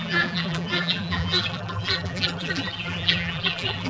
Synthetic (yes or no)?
yes